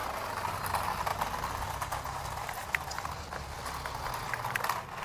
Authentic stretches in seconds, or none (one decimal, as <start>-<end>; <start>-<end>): 0.0-5.0